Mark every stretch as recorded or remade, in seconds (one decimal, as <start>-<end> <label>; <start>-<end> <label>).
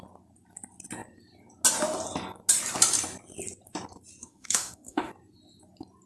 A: 0.0-4.2 recorded; 4.2-5.1 remade; 5.1-6.1 recorded